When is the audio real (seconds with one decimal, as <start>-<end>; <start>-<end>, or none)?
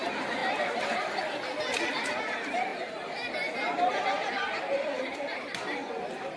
0.0-6.4